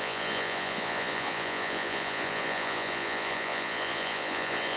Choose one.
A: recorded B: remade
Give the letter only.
B